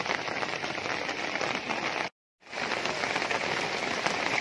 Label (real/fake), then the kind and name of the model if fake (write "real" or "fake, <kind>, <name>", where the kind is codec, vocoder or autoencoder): real